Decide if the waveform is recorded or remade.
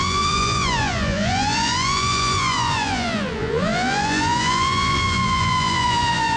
remade